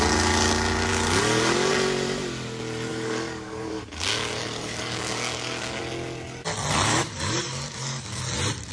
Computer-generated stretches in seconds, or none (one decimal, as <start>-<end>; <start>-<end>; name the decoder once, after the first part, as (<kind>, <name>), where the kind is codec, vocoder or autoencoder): 0.9-1.7 (codec, DAC); 2.9-5.8; 6.9-8.2